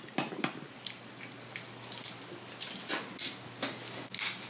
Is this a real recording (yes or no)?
yes